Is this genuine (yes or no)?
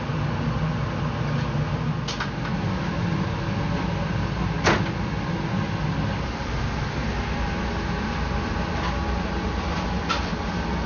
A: yes